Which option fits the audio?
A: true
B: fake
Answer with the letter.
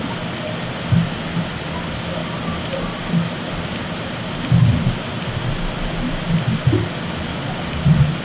A